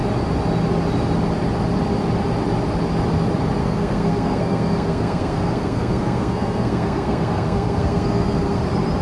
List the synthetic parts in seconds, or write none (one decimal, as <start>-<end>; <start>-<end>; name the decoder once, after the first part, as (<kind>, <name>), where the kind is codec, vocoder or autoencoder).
3.6-8.6 (codec, SNAC)